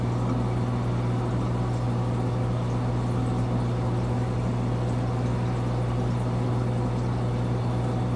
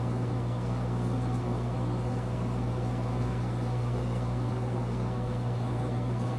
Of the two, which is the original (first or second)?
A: first